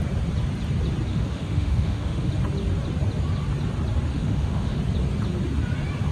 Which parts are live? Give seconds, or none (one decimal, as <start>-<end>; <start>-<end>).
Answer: 0.0-1.1; 2.3-4.1; 4.8-6.1